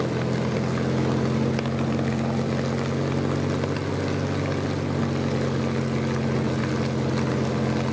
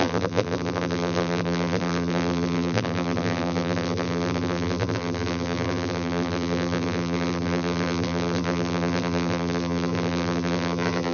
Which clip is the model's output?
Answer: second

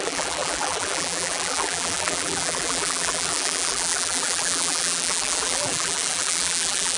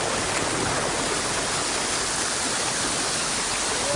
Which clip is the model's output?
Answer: first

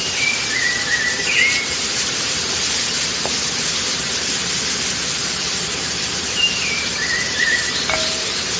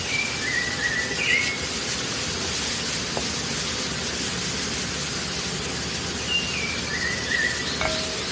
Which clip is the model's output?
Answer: first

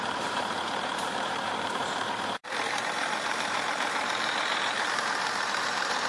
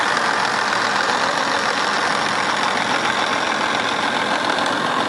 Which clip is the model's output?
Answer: first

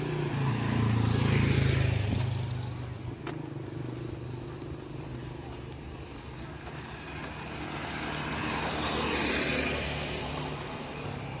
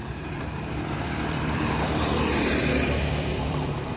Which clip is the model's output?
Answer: second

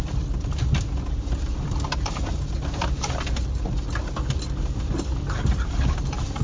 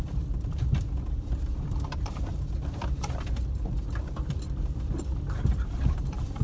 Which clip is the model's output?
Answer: second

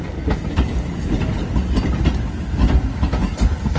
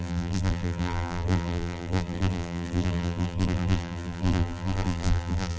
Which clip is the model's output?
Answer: second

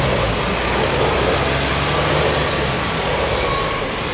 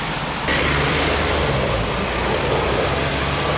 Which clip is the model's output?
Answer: second